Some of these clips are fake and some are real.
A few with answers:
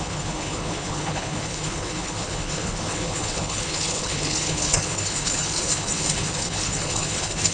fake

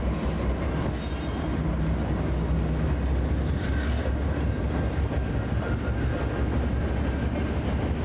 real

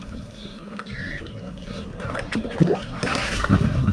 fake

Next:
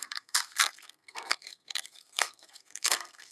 fake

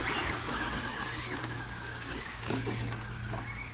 fake